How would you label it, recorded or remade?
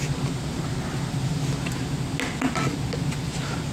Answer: recorded